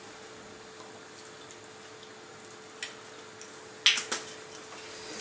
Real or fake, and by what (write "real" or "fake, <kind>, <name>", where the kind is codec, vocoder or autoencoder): real